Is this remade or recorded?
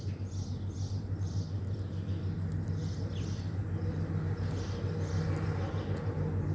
recorded